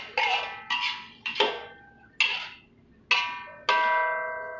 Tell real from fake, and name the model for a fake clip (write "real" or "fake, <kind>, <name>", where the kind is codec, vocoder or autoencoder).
real